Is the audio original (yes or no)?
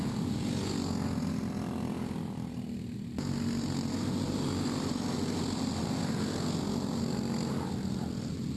yes